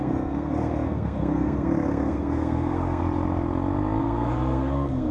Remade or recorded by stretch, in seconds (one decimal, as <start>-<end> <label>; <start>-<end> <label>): 0.0-3.0 remade; 3.0-4.0 recorded; 4.0-5.1 remade